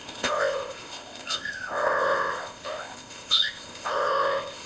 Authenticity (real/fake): fake